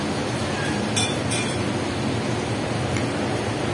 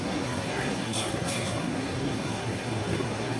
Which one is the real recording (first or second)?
first